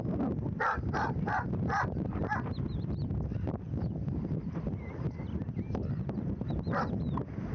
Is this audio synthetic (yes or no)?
no